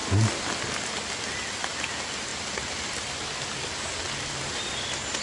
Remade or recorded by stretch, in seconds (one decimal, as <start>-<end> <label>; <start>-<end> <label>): 0.0-5.2 recorded